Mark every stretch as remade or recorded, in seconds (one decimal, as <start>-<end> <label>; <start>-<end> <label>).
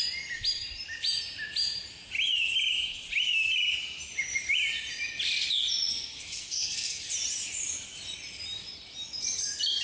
0.0-5.9 recorded; 5.9-7.1 remade; 7.1-9.8 recorded